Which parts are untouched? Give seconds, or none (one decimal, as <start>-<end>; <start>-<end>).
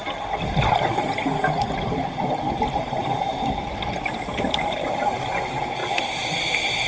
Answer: 0.0-6.9